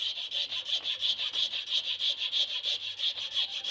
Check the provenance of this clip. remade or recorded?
recorded